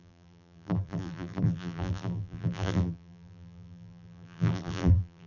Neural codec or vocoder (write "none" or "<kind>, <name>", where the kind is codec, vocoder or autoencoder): vocoder, BigVGAN v2